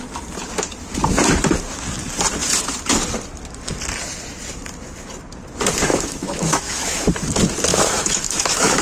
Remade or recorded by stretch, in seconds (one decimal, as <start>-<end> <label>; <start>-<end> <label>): 0.0-5.9 recorded; 5.9-7.1 remade; 7.1-7.7 recorded; 7.7-8.8 remade